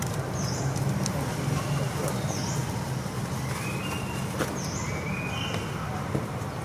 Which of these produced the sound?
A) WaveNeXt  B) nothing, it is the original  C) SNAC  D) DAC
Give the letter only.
B